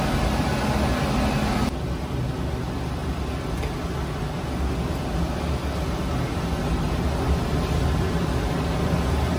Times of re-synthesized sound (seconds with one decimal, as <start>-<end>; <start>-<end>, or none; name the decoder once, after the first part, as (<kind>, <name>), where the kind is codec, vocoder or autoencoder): none